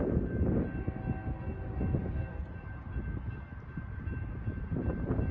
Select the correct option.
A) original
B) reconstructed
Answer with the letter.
A